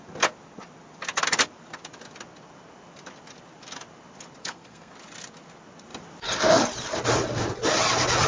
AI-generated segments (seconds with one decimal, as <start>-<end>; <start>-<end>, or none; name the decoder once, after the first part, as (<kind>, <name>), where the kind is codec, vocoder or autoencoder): 4.4-4.9 (codec, SNAC)